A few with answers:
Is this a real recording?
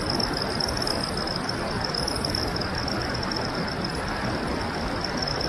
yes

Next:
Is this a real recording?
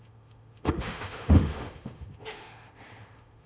no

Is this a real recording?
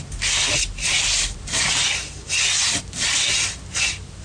yes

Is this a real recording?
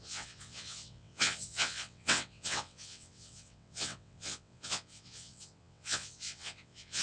no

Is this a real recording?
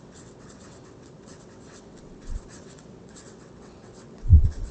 no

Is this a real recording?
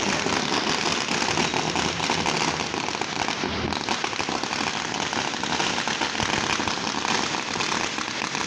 yes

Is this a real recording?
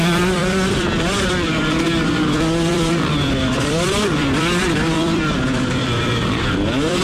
no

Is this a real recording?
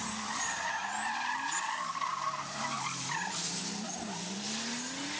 yes